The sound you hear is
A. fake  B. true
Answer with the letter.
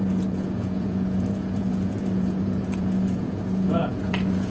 A